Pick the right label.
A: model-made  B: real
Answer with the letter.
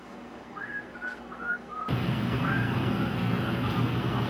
A